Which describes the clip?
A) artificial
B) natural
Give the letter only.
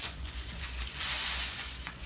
A